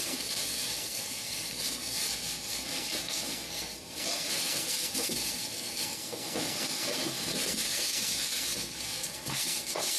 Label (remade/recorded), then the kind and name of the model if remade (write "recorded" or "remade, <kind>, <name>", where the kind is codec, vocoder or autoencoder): remade, codec, SNAC